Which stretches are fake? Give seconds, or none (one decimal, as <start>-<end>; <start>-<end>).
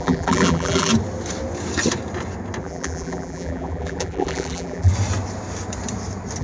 0.0-0.9; 2.6-4.9